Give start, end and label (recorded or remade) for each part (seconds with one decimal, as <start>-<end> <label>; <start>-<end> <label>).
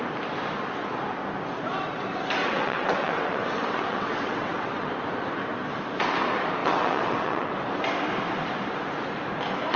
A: 0.0-2.4 recorded; 2.4-4.9 remade; 4.9-6.6 recorded; 6.6-7.5 remade; 7.5-9.8 recorded